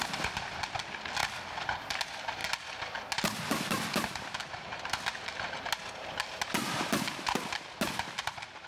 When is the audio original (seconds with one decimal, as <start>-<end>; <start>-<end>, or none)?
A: 0.0-8.7

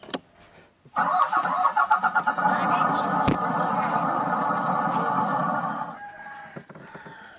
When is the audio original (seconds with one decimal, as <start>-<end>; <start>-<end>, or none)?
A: 0.0-7.4

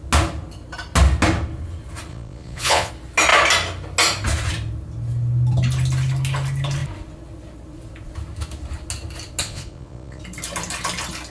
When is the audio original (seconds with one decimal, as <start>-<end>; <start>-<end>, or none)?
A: 0.0-2.1; 2.9-9.4; 10.2-11.3